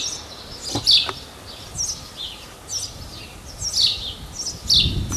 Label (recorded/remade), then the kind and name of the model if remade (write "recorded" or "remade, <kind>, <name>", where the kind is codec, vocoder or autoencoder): recorded